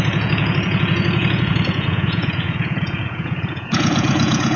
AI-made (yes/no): yes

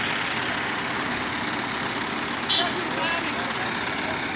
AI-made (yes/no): no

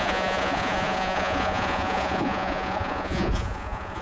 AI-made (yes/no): yes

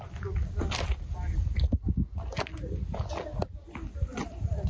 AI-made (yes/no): no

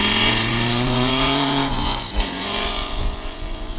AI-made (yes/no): yes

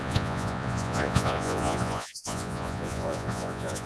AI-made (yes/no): yes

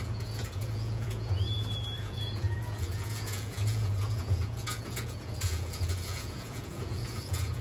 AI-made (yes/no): yes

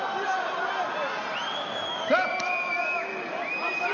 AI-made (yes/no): no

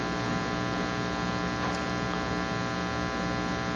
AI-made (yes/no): no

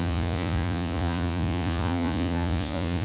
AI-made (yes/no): yes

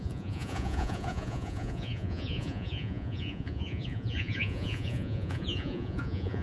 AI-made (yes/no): yes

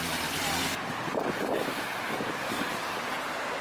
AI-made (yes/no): no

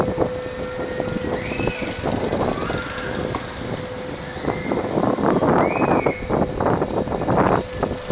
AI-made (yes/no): no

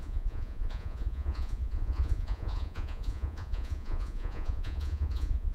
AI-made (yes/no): yes